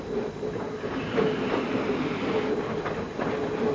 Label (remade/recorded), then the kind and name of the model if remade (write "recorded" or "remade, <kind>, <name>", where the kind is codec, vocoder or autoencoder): recorded